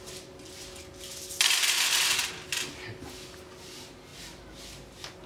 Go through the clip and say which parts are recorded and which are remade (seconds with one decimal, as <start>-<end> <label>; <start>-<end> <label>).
0.0-5.3 recorded